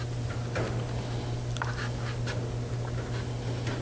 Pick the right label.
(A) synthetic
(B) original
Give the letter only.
B